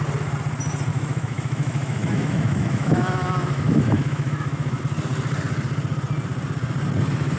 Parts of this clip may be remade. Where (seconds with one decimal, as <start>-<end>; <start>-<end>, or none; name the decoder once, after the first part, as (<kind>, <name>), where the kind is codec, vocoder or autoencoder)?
0.9-4.8 (autoencoder, DAC-VAE)